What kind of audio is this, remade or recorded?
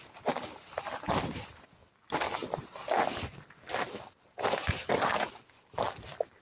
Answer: recorded